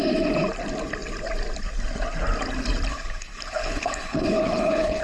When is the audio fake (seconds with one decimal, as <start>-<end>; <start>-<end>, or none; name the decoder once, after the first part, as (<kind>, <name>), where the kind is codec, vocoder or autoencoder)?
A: 2.9-5.0 (codec, HILCodec)